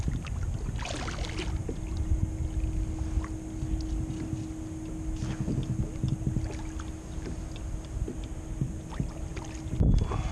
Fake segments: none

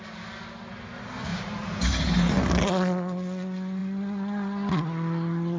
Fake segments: 1.3-2.1 (vocoder, BigVGAN v2)

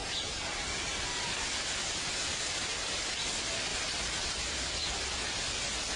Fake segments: 0.0-0.6 (vocoder, BigVGAN v2); 1.8-3.1; 3.7-4.4

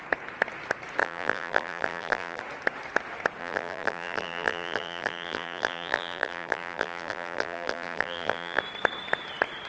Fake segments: 1.0-2.4 (vocoder, BigVGAN v2); 3.4-8.6

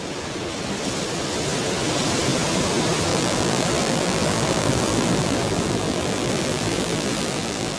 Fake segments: 3.1-7.8 (vocoder, BigVGAN v2)

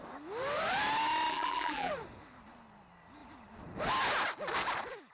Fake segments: 1.3-1.9 (vocoder, BigVGAN v2)